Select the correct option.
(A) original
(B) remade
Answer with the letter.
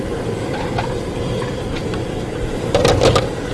A